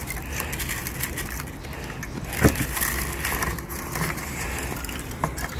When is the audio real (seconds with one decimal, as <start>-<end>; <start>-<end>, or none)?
0.0-5.6